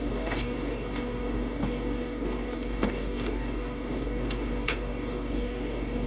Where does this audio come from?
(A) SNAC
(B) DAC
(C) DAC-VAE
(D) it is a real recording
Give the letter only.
B